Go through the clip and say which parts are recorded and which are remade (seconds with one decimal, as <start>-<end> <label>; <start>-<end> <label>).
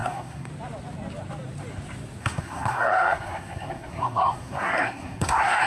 0.0-0.5 remade; 0.5-2.2 recorded; 2.2-5.7 remade